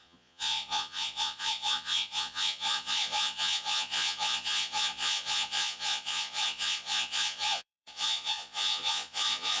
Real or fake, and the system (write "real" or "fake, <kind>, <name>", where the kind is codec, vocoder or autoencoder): fake, vocoder, Vocos